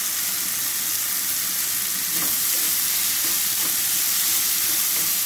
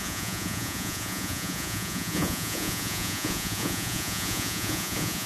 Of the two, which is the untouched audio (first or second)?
first